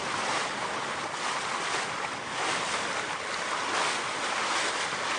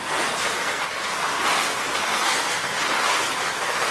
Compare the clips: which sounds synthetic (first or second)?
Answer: second